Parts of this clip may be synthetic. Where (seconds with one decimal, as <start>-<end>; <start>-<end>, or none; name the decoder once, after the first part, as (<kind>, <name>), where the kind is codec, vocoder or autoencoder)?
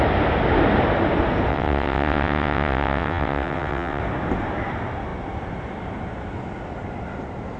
1.5-4.0 (vocoder, WaveNeXt)